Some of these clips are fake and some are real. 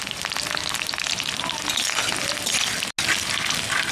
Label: real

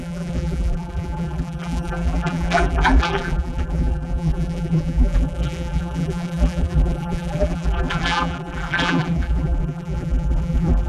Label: fake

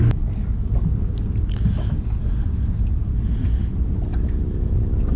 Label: real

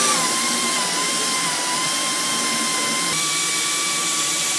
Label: fake